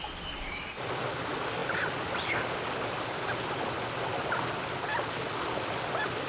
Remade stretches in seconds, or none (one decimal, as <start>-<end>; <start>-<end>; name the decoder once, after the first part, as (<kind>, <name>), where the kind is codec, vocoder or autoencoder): none